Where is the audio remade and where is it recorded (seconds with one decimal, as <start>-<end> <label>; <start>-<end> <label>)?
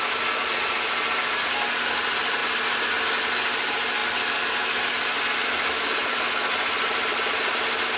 0.0-2.4 recorded; 2.4-3.2 remade; 3.2-6.0 recorded; 6.0-7.6 remade; 7.6-8.0 recorded